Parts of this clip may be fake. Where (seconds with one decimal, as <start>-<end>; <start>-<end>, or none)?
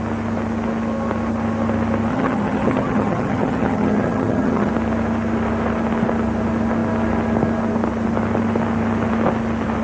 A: 2.1-4.7